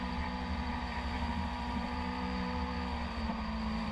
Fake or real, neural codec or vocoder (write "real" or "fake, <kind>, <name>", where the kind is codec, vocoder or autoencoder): fake, vocoder, BigVGAN v2